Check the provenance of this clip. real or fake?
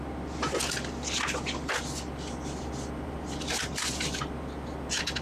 real